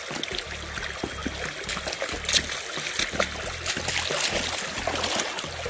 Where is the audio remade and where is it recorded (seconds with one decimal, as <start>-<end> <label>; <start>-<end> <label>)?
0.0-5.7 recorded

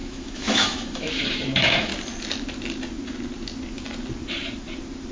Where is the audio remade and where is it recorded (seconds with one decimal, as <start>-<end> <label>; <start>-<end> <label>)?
0.0-1.9 remade; 1.9-5.1 recorded

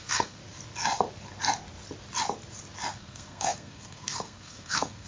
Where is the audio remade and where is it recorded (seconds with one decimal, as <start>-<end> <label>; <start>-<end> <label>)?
0.0-0.4 remade; 0.4-2.9 recorded; 2.9-5.1 remade